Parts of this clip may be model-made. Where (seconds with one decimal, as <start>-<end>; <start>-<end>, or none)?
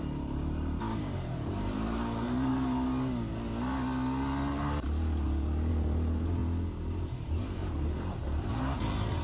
0.0-2.5; 5.7-6.4; 7.0-9.2